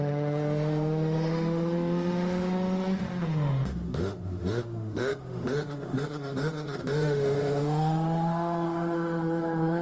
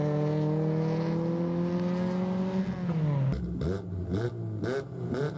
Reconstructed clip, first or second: first